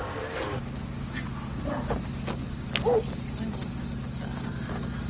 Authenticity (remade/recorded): recorded